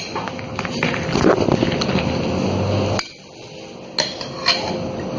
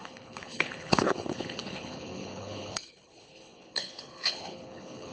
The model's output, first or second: second